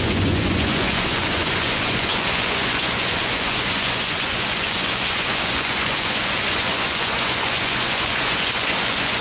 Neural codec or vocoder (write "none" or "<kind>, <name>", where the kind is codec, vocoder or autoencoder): vocoder, Vocos